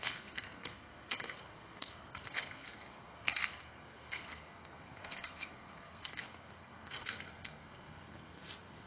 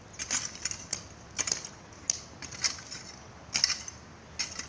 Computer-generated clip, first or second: first